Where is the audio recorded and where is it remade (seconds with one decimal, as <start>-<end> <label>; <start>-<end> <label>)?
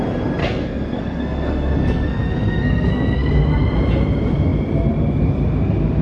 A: 0.0-0.4 recorded; 0.4-3.3 remade; 3.3-6.0 recorded